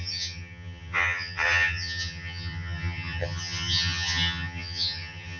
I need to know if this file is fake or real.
fake